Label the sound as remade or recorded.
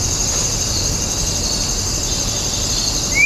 remade